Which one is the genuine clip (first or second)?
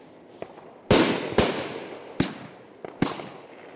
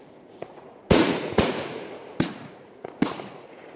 first